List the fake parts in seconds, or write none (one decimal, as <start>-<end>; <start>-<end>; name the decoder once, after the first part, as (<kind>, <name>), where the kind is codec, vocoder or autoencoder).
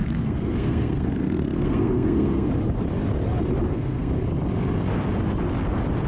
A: 0.0-2.5 (codec, SNAC); 3.7-4.2